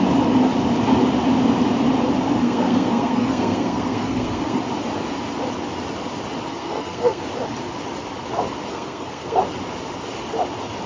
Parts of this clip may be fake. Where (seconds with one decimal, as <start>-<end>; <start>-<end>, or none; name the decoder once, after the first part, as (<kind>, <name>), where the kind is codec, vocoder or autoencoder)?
2.4-4.6 (codec, SNAC); 6.5-7.2; 8.7-9.4